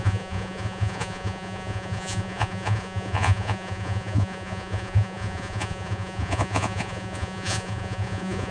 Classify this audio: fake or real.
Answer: fake